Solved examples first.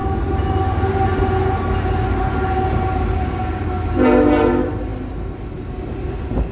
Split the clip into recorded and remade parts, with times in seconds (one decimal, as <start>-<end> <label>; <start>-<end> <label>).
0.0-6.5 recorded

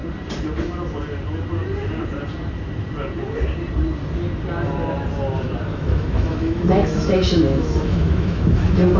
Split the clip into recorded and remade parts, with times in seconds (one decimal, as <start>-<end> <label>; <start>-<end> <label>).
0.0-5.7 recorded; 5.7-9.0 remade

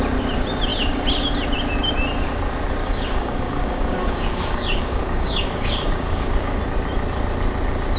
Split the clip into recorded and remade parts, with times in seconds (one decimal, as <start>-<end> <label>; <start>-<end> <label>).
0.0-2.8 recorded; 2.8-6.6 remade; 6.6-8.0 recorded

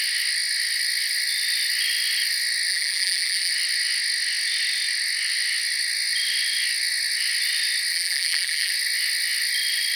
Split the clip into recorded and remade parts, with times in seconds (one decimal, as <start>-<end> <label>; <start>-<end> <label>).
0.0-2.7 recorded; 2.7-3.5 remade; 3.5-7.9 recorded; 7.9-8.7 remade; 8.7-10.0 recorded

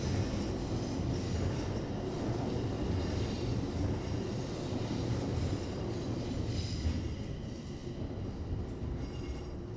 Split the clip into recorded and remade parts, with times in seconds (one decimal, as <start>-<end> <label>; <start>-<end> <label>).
0.0-9.8 recorded

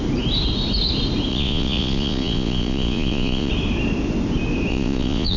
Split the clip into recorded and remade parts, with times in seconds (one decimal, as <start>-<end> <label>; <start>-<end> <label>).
0.0-1.3 recorded; 1.3-3.5 remade; 3.5-4.7 recorded; 4.7-5.4 remade